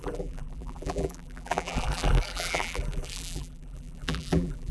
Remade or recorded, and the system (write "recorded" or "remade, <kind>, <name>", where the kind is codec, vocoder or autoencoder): remade, vocoder, BigVGAN v2